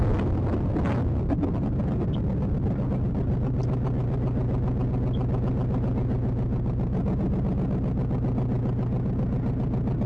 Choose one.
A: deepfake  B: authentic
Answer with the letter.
B